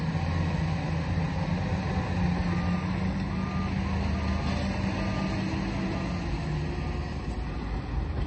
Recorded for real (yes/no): yes